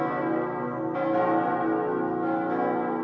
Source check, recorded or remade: recorded